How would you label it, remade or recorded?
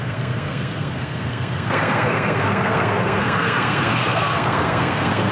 remade